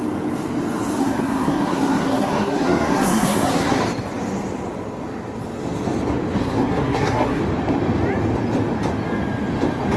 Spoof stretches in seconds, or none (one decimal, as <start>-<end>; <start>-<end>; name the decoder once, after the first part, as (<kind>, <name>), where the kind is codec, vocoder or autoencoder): 1.0-3.8 (codec, SNAC); 6.4-7.4